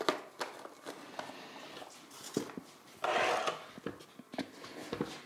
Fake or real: real